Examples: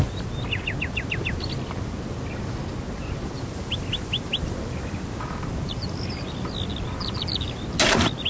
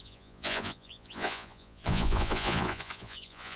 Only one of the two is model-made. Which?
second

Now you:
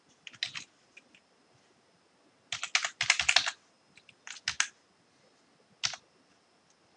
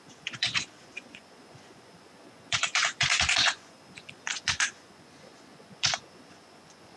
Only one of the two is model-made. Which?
second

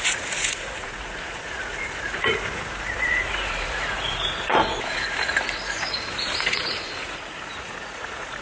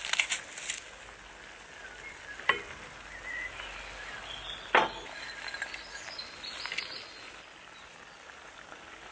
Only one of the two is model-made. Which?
first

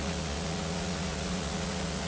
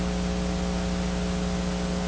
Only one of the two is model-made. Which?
first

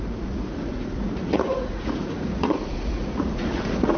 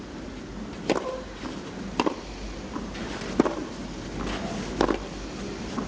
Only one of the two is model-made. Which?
first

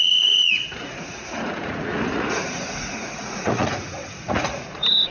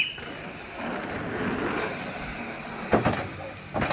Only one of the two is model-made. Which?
first